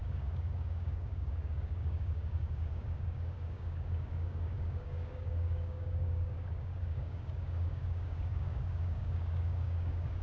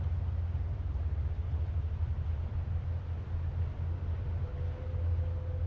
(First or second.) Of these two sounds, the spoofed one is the first